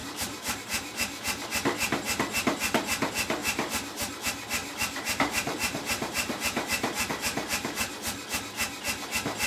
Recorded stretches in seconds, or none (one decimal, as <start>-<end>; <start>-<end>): 0.6-3.4; 4.1-4.6; 7.1-9.5